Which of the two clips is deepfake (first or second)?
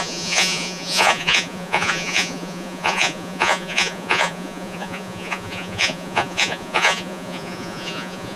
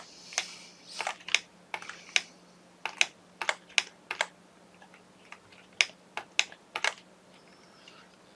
first